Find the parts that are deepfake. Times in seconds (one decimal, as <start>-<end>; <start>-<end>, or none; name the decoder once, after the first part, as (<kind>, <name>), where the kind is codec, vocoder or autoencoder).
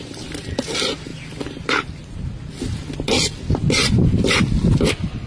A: none